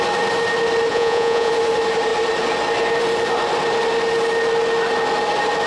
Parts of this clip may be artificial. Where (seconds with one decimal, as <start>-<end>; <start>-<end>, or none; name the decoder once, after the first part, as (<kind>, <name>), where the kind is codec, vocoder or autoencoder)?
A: 0.9-1.5 (vocoder, Vocos)